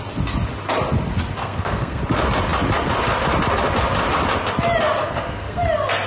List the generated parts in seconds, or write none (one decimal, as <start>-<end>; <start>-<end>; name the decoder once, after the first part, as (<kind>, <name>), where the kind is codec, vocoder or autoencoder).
1.4-2.0 (codec, SNAC); 5.0-5.6